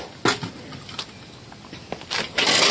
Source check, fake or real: real